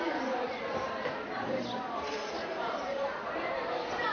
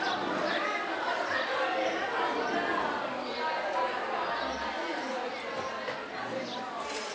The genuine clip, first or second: second